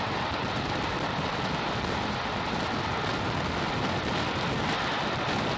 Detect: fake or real real